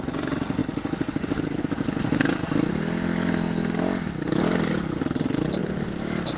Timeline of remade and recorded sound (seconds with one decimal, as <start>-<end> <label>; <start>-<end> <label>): 0.0-6.4 recorded